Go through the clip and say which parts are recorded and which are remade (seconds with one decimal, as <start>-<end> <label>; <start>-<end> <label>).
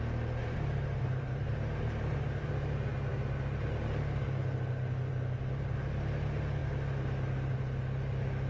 0.0-0.4 recorded; 0.4-2.5 remade; 2.5-8.5 recorded